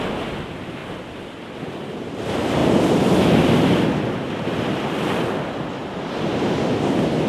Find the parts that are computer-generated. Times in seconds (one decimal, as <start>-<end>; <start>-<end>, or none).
none